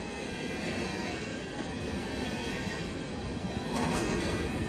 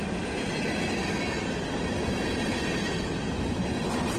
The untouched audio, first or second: second